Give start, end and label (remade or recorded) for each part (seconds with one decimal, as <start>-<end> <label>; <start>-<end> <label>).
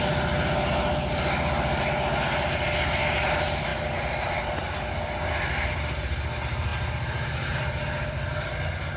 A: 0.0-9.0 recorded